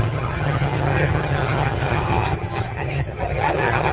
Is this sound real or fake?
fake